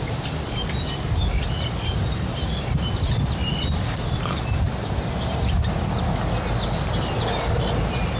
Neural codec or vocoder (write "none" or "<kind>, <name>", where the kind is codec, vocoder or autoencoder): none